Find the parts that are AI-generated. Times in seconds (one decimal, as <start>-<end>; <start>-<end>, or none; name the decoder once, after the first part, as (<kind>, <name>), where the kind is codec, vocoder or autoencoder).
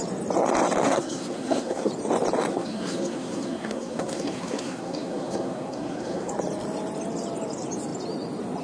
0.8-1.9 (codec, SNAC); 2.5-6.3